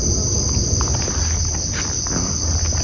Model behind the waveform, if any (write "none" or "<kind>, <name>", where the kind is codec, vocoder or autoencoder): none